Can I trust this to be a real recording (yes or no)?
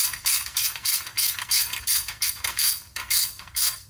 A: no